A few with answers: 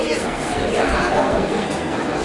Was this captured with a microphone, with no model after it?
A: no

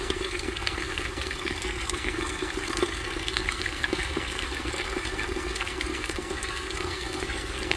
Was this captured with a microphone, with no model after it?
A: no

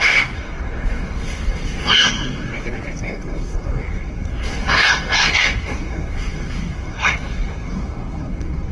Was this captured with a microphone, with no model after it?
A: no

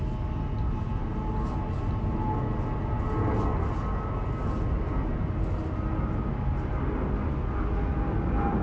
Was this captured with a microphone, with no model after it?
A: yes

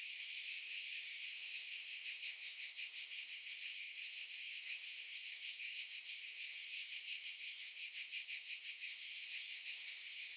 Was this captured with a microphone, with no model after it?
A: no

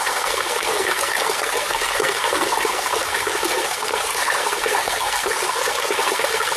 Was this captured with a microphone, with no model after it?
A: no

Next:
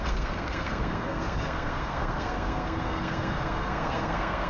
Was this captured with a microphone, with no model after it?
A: no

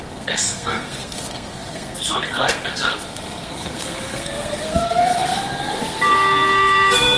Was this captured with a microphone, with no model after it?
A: no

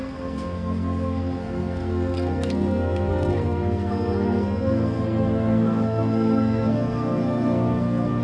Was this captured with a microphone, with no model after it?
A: no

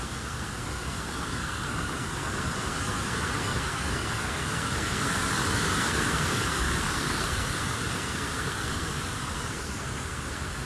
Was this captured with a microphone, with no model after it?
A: no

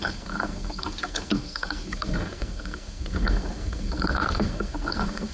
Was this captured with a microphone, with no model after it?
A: no